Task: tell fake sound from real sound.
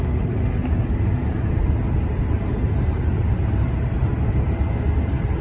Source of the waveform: real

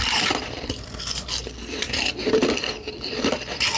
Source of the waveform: fake